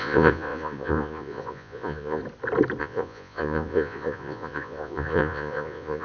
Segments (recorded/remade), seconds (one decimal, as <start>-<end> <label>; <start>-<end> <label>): 0.0-2.2 remade; 2.2-2.8 recorded; 2.8-6.0 remade